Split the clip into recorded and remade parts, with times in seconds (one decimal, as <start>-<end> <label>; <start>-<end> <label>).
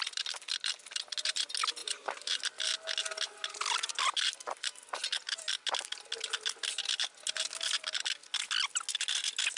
0.0-1.8 recorded; 1.8-2.4 remade; 2.4-9.6 recorded